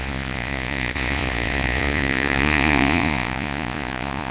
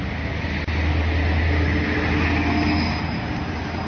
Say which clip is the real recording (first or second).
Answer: second